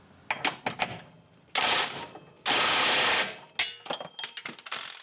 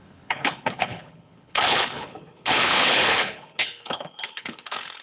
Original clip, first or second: first